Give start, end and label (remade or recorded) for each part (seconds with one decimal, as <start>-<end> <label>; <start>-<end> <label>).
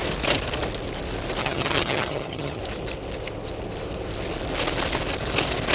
0.0-1.4 recorded; 1.4-2.6 remade; 2.6-5.7 recorded